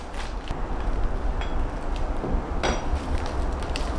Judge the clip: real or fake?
real